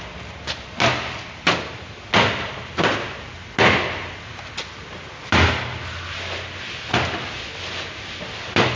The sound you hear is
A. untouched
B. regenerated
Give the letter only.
A